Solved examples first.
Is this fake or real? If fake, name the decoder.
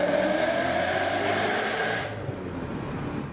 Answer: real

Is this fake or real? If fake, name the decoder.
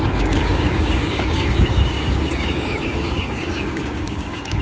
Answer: fake, codec, DAC